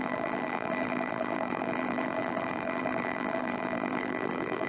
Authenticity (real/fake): fake